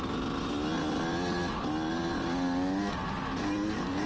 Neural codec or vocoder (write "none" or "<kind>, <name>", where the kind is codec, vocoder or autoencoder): none